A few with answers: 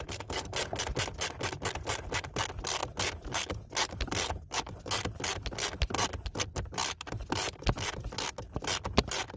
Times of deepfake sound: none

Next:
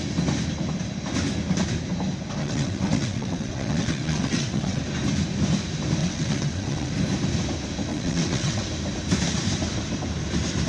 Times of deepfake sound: 2.4-4.8 (vocoder, WaveNeXt); 6.0-6.9; 7.9-8.6